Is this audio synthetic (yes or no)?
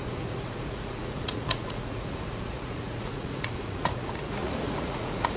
yes